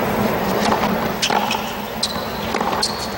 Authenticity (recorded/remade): recorded